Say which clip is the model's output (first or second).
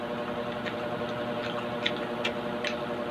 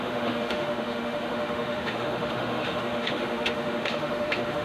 second